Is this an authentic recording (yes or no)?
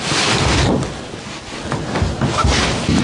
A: yes